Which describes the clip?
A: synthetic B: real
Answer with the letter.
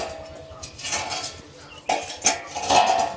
B